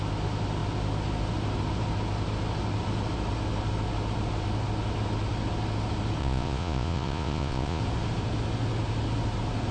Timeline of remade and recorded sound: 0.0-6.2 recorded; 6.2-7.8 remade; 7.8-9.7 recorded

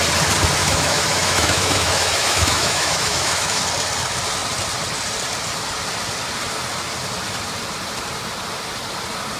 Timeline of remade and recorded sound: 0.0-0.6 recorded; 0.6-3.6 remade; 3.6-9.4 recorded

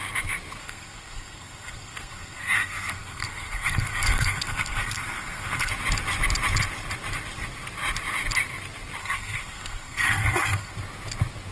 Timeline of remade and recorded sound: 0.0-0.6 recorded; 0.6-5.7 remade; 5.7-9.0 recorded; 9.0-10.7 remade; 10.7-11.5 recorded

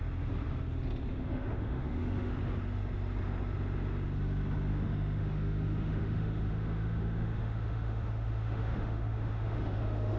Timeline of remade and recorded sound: 0.0-1.1 recorded; 1.1-2.3 remade; 2.3-4.7 recorded; 4.7-10.2 remade